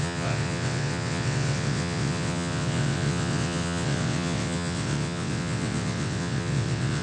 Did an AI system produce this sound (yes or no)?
yes